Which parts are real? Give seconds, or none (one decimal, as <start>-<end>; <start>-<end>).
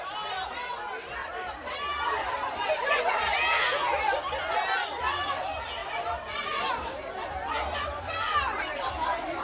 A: 0.0-1.2; 3.1-5.8; 6.6-9.4